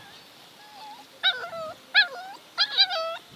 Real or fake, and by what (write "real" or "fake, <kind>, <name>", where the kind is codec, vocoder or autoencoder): real